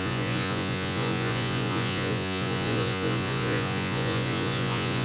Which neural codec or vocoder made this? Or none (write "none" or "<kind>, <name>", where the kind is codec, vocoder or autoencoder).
vocoder, Vocos